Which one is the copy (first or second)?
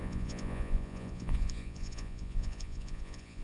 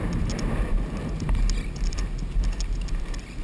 first